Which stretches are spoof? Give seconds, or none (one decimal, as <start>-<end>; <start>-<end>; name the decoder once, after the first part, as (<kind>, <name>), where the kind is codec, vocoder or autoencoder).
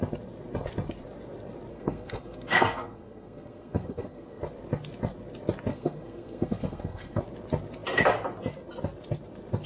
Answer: 1.7-4.4 (codec, SNAC); 5.7-7.2